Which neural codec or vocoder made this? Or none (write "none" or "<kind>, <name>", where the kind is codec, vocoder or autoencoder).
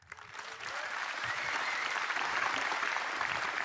vocoder, BigVGAN v2